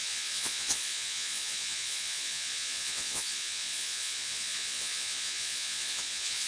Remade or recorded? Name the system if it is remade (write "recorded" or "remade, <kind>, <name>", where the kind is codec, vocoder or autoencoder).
remade, vocoder, Vocos